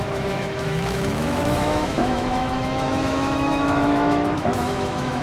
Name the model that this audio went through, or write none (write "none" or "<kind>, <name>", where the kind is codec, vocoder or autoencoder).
autoencoder, DAC-VAE